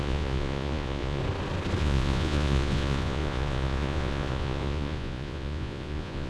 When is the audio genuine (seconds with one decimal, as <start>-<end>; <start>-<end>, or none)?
1.2-1.8